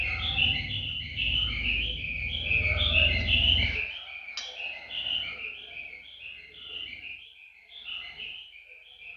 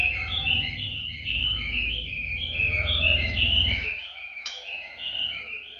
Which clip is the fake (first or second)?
second